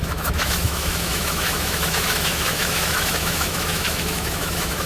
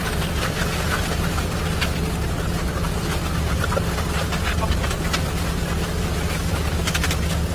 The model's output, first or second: first